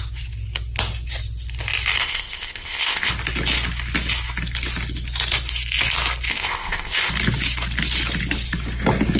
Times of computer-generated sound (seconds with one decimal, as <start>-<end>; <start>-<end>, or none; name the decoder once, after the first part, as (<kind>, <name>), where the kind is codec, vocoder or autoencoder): 2.0-3.1 (codec, ZipCodec); 6.3-7.1